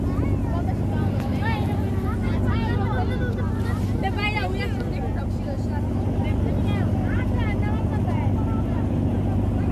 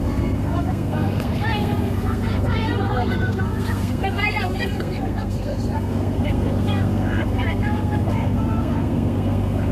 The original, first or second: first